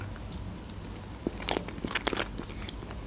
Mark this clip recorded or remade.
recorded